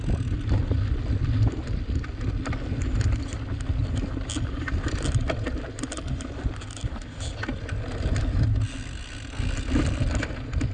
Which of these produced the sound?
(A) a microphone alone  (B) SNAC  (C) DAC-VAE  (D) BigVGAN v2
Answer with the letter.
A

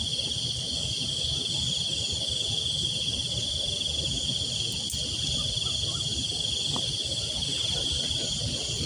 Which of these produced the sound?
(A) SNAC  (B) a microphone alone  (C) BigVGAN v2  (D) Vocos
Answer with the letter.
B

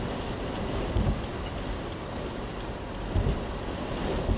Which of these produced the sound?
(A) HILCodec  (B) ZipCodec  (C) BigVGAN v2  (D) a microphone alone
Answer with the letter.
D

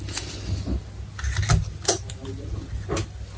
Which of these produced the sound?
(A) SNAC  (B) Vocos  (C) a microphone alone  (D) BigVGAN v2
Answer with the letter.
C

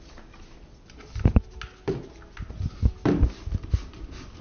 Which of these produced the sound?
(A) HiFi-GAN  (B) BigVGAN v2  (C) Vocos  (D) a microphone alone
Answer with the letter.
D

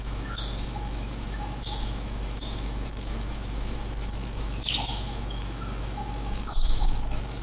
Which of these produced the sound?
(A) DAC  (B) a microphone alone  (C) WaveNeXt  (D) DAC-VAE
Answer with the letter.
D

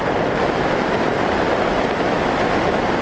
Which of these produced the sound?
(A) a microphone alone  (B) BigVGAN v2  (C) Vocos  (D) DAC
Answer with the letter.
A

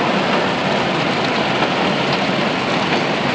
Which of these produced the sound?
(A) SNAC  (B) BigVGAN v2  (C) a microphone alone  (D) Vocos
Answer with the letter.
B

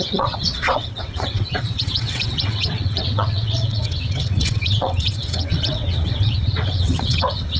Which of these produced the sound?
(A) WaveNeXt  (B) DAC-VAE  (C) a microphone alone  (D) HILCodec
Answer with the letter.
A